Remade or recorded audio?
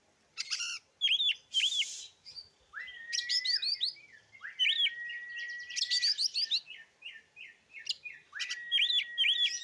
recorded